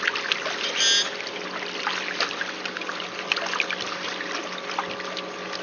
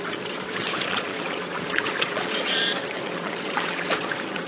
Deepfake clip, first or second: second